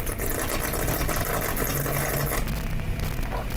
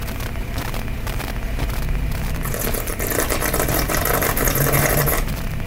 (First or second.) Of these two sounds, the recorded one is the first